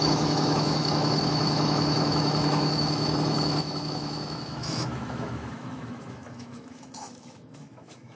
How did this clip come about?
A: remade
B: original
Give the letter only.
A